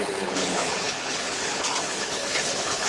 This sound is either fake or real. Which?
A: fake